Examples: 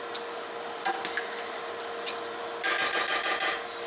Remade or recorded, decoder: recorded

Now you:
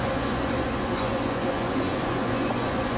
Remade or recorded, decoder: remade, vocoder, Vocos